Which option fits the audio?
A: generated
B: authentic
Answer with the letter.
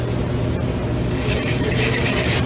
A